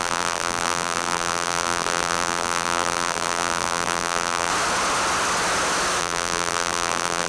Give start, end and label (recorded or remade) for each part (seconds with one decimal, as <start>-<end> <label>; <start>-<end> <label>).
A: 0.0-4.5 remade; 4.5-6.0 recorded; 6.0-7.3 remade